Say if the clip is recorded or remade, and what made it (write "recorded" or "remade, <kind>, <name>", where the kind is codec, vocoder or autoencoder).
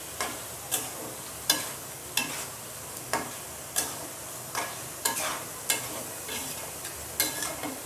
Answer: recorded